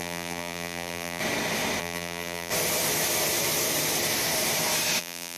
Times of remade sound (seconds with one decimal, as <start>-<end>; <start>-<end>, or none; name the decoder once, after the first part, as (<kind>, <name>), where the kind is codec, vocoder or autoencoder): 0.0-1.2 (vocoder, BigVGAN v2); 1.8-2.5; 5.0-5.4